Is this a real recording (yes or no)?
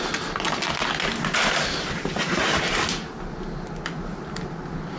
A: yes